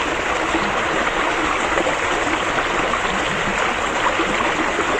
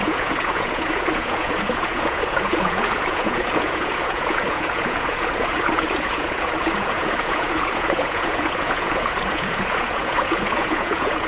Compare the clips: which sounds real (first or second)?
first